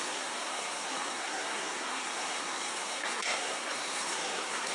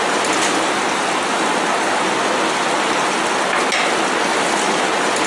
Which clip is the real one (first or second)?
second